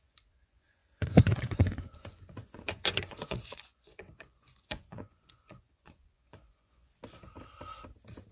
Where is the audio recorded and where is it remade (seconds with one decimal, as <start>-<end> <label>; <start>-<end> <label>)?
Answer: 0.0-7.0 remade; 7.0-8.3 recorded